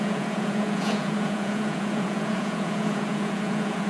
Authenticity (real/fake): fake